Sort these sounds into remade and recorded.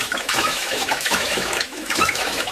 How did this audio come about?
remade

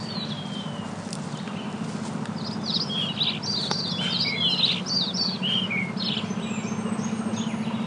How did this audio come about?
recorded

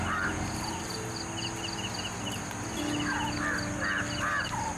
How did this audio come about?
recorded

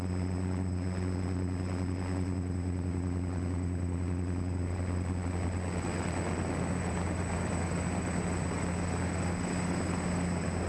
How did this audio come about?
recorded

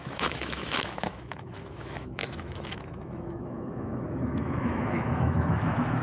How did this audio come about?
remade